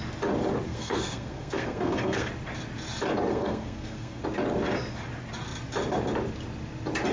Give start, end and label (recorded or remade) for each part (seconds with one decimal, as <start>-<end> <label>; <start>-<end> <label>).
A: 0.0-0.7 recorded; 0.7-2.3 remade; 2.3-3.3 recorded; 3.3-4.2 remade; 4.2-7.1 recorded